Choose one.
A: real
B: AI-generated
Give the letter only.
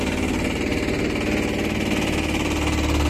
A